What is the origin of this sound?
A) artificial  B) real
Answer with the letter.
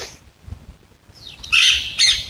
B